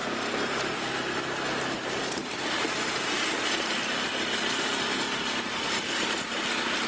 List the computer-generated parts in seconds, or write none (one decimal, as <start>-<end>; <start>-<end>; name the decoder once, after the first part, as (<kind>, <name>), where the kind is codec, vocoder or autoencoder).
0.0-0.9 (vocoder, BigVGAN v2); 2.2-3.3